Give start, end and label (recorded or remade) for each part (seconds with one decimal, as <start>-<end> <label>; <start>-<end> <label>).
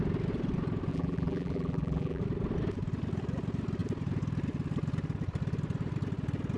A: 0.0-0.9 recorded; 0.9-2.2 remade; 2.2-6.6 recorded